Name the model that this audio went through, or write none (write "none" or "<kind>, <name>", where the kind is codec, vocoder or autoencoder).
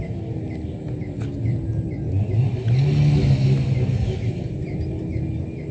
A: none